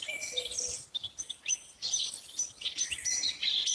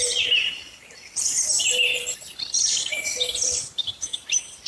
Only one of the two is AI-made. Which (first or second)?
second